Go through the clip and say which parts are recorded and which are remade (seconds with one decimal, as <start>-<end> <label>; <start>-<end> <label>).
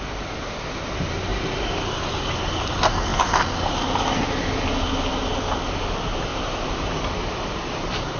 0.0-1.3 recorded; 1.3-2.7 remade; 2.7-3.1 recorded; 3.1-3.7 remade; 3.7-6.3 recorded; 6.3-6.9 remade; 6.9-8.2 recorded